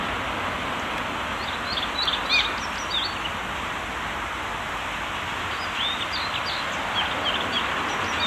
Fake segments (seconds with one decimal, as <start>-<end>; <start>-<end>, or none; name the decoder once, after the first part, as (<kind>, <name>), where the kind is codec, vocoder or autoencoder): none